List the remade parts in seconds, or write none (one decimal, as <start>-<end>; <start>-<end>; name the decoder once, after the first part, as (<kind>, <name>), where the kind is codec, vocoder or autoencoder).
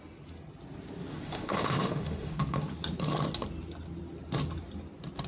1.1-2.4 (autoencoder, DAC-VAE)